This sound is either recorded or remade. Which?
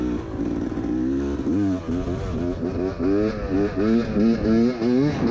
recorded